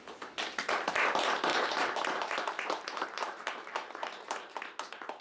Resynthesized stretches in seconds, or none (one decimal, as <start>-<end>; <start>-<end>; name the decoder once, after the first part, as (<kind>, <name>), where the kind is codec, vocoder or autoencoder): 1.5-4.6 (vocoder, BigVGAN v2)